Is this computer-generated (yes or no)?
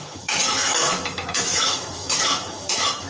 yes